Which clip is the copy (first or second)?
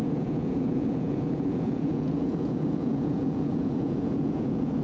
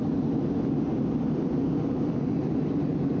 first